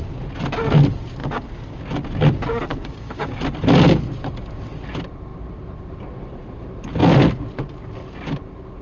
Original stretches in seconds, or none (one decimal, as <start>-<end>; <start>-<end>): 0.0-1.2; 1.8-2.7; 3.4-8.8